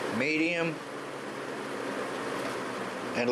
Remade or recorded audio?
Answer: recorded